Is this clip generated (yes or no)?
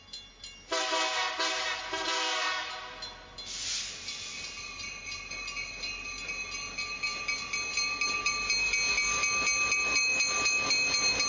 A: no